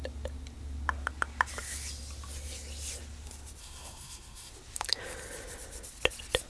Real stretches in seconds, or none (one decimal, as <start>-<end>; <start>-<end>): 0.0-3.6; 4.5-6.5